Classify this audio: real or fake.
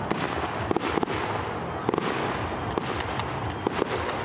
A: real